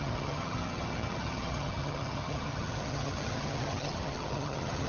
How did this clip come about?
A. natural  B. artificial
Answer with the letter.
B